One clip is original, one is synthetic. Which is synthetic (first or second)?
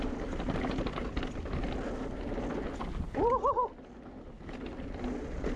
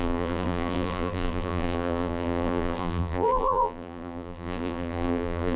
second